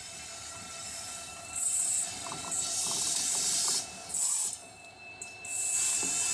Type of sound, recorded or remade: recorded